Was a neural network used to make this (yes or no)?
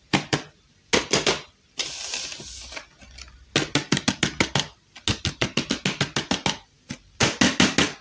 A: no